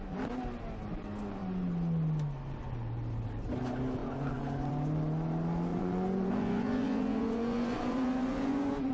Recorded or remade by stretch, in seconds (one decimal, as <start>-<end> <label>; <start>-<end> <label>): 0.0-4.0 recorded; 4.0-4.7 remade; 4.7-5.7 recorded; 5.7-8.9 remade